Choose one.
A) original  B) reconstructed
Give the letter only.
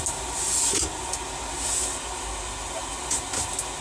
A